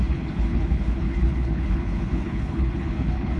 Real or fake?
fake